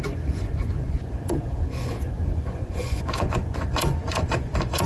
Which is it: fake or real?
fake